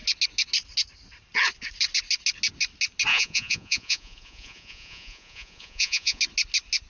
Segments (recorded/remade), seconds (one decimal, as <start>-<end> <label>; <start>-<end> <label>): 0.0-3.1 recorded; 3.1-6.2 remade; 6.2-6.9 recorded